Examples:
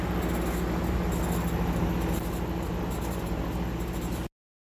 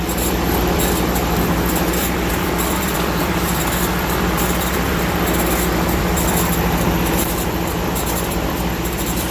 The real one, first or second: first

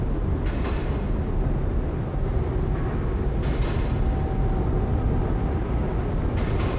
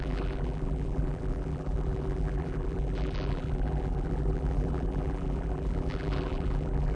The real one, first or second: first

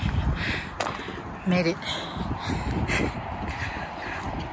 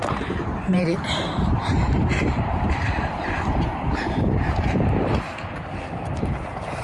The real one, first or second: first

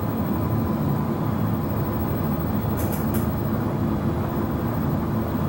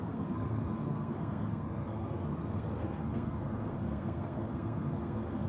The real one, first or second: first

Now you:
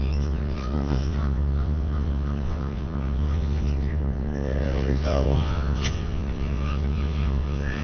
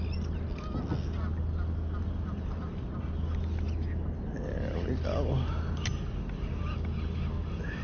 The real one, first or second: second